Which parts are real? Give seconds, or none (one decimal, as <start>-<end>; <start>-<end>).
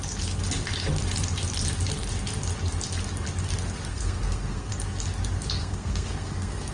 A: 0.0-3.9; 4.7-5.6